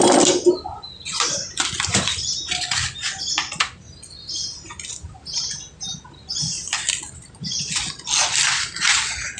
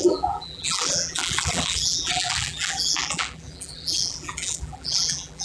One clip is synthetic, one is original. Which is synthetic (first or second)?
second